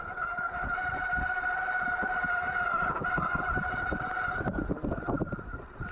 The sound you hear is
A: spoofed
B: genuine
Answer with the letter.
B